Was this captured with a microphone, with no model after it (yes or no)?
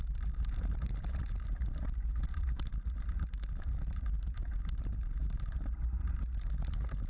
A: no